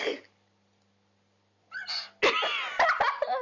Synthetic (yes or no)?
no